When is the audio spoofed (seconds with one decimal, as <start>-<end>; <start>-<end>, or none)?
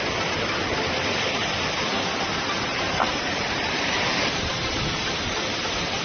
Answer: 2.7-6.0